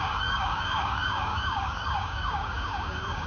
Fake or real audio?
fake